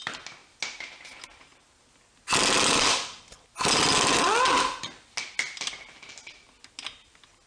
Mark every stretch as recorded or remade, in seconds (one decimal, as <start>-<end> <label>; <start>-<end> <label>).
0.0-7.5 recorded